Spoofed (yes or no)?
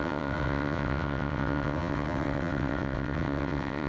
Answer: yes